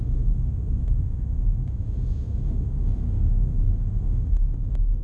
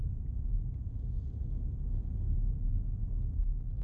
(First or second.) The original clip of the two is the second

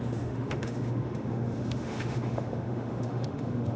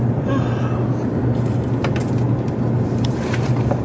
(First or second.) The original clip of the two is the second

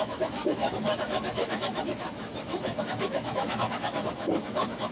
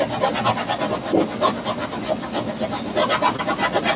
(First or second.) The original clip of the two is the second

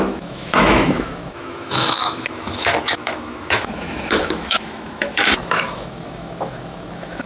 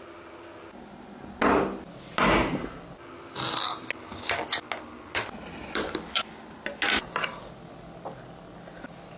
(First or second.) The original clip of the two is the second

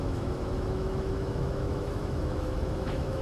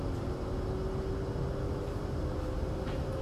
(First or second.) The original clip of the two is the second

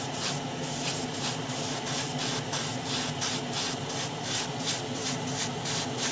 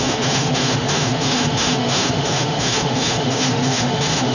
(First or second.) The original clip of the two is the first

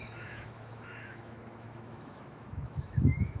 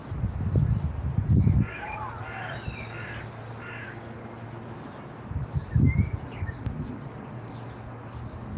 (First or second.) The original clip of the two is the second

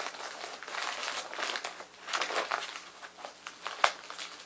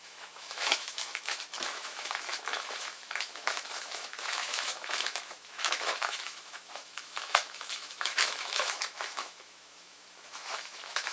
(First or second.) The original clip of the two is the first